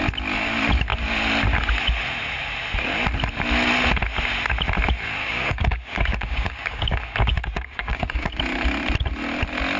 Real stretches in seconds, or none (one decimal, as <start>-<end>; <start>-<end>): 0.0-5.2; 8.4-9.8